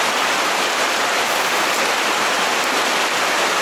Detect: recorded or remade recorded